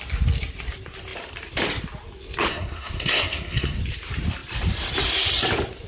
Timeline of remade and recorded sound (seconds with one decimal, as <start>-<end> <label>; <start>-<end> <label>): 0.0-2.5 recorded; 2.5-3.8 remade; 3.8-5.9 recorded